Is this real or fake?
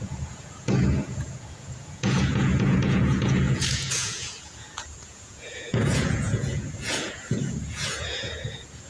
fake